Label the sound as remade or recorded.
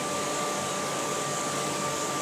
remade